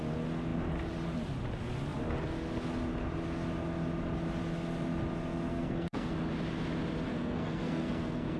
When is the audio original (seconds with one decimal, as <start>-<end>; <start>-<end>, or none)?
0.0-5.5; 6.1-7.1